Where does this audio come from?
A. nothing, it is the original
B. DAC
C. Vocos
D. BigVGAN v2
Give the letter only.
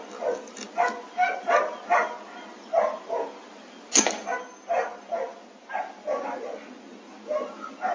A